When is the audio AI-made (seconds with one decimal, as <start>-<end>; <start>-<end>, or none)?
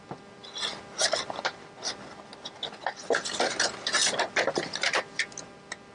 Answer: none